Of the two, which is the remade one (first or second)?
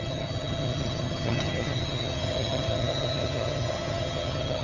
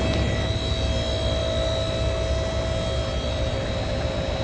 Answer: first